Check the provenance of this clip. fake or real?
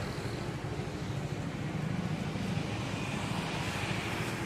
real